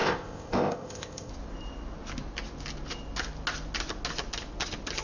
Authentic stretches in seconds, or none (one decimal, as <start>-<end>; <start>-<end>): 1.3-5.0